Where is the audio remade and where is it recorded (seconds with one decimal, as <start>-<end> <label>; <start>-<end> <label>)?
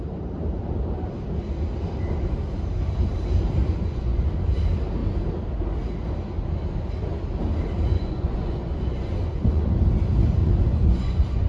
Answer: 0.0-3.6 recorded; 3.6-4.3 remade; 4.3-7.9 recorded; 7.9-9.7 remade; 9.7-10.4 recorded; 10.4-11.5 remade